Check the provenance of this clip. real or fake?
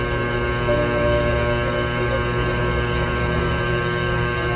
fake